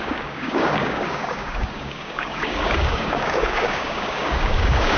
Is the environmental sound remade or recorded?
remade